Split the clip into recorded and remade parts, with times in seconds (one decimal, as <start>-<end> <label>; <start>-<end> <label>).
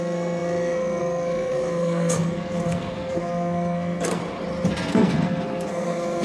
0.0-4.2 remade; 4.2-4.9 recorded; 4.9-6.2 remade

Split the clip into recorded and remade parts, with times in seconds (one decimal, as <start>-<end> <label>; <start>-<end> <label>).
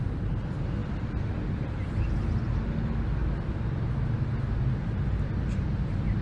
0.0-6.2 recorded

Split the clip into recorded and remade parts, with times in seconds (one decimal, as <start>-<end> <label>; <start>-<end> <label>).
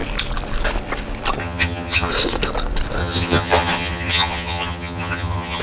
0.0-1.4 recorded; 1.4-2.1 remade; 2.1-3.0 recorded; 3.0-5.6 remade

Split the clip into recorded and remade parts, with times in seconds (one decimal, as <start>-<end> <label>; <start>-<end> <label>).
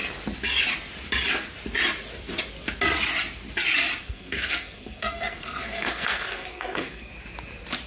0.0-4.0 recorded; 4.0-7.1 remade; 7.1-7.9 recorded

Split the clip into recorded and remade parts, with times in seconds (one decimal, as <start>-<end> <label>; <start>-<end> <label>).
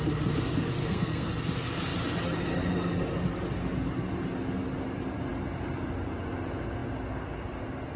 0.0-0.8 recorded; 0.8-1.3 remade; 1.3-8.0 recorded